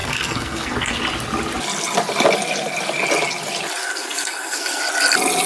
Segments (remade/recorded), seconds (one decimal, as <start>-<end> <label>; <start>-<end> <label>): 0.0-1.0 remade; 1.0-3.8 recorded; 3.8-4.8 remade; 4.8-5.5 recorded